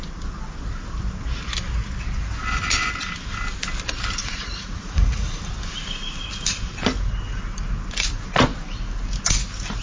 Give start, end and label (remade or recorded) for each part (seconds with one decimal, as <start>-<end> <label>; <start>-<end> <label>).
0.0-4.2 recorded; 4.2-5.4 remade; 5.4-9.8 recorded